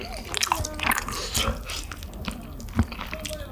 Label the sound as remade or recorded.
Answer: recorded